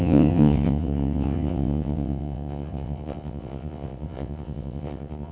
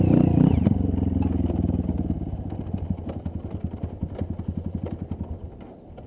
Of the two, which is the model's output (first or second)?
first